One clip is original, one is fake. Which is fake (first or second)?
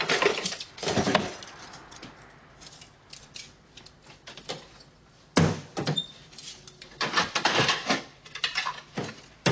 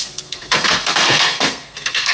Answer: second